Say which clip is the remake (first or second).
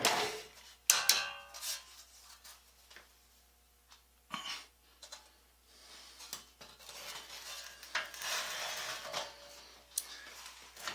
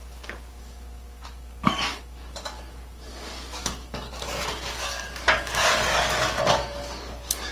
second